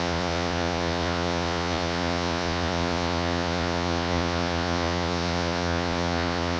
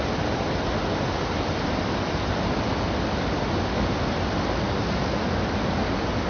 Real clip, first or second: second